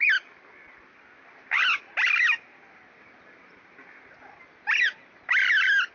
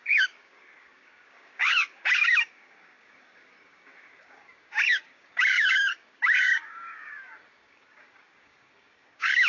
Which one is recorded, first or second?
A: first